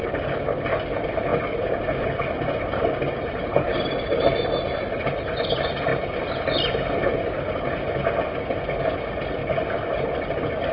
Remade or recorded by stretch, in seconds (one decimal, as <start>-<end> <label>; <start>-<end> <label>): 0.0-10.7 recorded